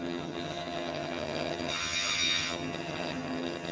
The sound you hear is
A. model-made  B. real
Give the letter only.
A